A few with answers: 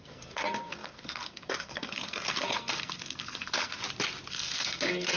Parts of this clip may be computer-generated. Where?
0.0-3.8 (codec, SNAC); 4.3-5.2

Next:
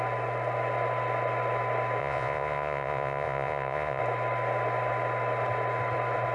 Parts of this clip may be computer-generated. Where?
2.0-4.0 (vocoder, Vocos)

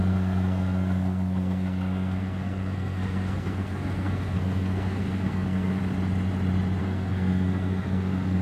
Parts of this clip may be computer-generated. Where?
0.0-5.8 (codec, SNAC); 6.8-8.4

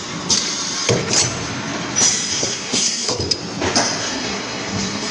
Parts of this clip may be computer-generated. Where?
2.3-3.2 (codec, SNAC); 4.0-5.1